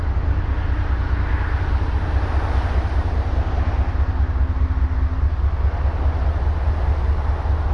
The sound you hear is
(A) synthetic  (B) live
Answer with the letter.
B